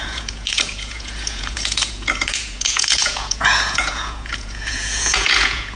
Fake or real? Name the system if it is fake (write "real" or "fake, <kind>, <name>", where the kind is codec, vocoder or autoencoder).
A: fake, vocoder, Vocos